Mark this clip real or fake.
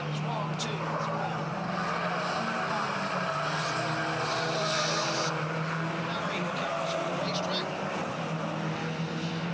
real